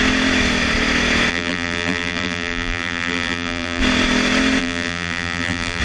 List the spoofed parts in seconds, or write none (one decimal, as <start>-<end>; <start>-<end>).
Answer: 1.3-3.8; 4.6-5.8